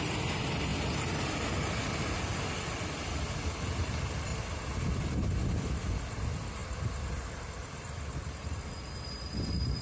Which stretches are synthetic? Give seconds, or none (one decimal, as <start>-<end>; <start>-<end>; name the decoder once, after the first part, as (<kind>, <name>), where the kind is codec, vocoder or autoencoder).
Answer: 0.0-4.3 (vocoder, BigVGAN v2); 4.8-6.6; 7.5-9.8